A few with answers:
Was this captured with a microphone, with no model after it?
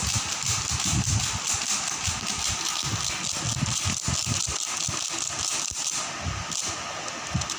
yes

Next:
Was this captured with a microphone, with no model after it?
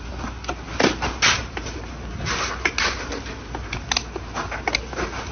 yes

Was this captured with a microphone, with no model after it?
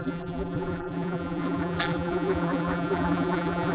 no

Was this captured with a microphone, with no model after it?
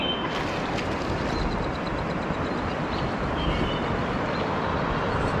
yes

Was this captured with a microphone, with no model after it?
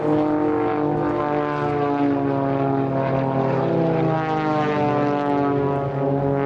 yes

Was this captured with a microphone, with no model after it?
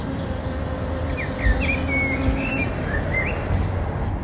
yes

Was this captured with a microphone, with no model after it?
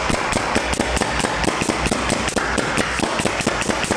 yes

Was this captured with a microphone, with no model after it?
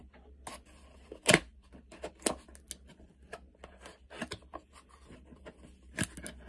yes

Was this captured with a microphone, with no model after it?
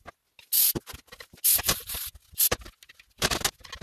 yes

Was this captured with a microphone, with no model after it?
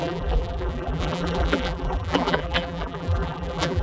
no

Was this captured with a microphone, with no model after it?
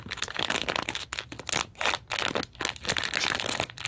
no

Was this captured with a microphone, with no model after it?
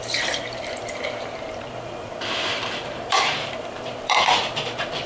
no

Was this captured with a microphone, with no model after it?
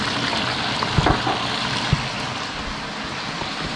yes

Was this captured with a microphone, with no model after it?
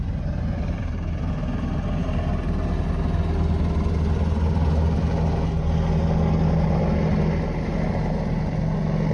yes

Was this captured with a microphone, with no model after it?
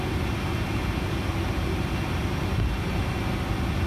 yes